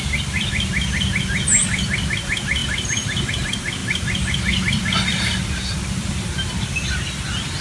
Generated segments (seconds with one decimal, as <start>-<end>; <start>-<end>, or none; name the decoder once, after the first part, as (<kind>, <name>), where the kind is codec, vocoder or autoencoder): none